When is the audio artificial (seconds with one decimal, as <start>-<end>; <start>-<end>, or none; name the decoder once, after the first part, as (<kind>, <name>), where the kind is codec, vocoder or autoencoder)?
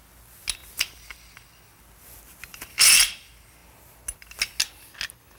none